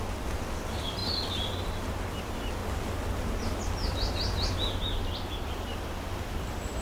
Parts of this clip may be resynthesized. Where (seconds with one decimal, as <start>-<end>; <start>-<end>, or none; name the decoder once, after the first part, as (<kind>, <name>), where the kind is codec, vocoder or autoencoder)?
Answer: none